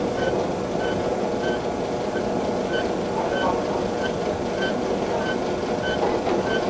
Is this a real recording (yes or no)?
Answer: yes